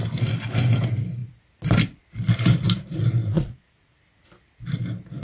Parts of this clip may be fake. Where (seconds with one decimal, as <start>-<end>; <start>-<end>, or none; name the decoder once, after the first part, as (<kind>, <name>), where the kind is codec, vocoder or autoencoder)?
3.2-4.0 (vocoder, Vocos)